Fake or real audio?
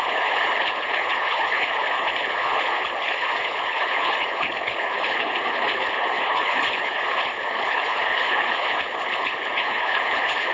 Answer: fake